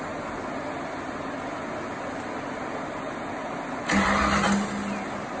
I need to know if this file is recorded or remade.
recorded